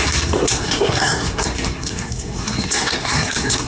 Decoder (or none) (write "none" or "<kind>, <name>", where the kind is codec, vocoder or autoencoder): codec, SNAC